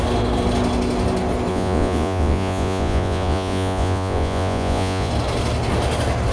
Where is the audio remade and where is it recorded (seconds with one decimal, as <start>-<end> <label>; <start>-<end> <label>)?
0.0-1.5 recorded; 1.5-5.1 remade; 5.1-6.3 recorded